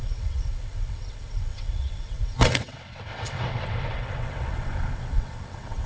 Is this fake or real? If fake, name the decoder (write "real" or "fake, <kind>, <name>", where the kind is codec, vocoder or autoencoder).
fake, vocoder, WaveNeXt